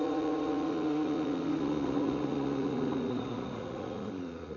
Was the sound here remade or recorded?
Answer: remade